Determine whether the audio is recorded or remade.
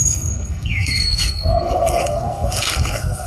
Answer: remade